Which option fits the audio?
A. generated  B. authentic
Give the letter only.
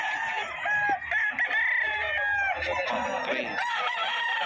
B